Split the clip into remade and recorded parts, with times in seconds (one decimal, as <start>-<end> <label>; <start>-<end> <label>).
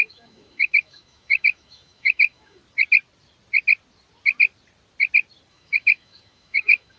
0.0-2.6 remade; 2.6-5.5 recorded; 5.5-7.0 remade